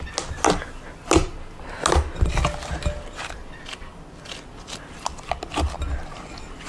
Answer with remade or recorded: recorded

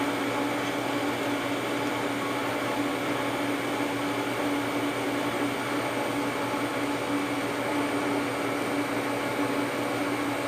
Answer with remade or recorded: recorded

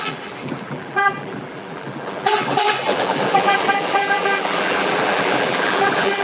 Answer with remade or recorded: remade